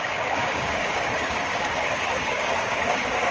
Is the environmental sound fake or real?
fake